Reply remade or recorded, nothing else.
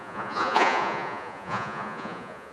remade